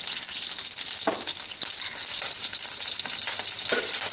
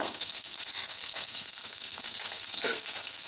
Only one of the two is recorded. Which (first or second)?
first